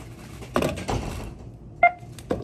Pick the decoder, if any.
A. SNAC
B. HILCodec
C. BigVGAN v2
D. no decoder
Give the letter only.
D